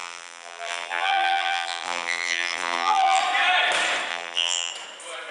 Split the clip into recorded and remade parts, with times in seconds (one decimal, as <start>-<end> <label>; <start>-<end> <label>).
0.0-3.2 remade; 3.2-4.1 recorded; 4.1-4.7 remade; 4.7-5.3 recorded